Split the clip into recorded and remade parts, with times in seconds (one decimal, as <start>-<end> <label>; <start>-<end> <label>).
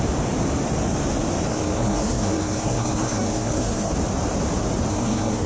0.0-1.5 recorded; 1.5-3.9 remade; 3.9-4.9 recorded; 4.9-5.5 remade